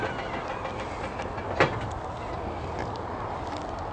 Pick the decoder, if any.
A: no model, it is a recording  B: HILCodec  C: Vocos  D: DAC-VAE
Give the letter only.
A